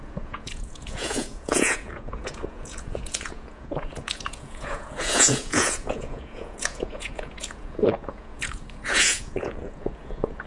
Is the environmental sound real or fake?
fake